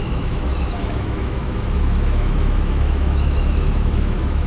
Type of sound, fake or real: fake